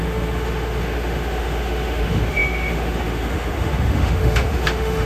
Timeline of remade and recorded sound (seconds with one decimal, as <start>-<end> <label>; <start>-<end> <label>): 0.0-5.1 remade